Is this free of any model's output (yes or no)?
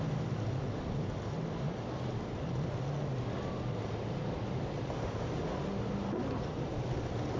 yes